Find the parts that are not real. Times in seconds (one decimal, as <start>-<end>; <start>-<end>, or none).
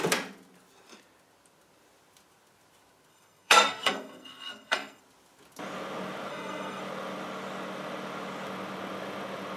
3.1-5.0; 6.3-6.8